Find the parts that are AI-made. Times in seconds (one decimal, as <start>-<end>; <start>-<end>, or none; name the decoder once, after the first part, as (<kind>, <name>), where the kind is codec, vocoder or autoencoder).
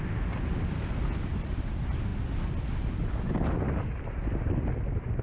none